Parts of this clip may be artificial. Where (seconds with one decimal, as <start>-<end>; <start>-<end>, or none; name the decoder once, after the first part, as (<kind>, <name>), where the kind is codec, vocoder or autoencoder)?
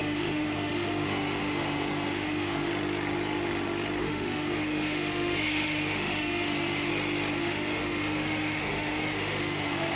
0.0-2.7 (autoencoder, DAC-VAE); 4.0-6.9; 7.4-10.0